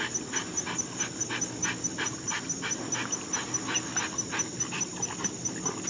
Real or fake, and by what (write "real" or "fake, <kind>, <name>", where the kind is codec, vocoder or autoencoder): real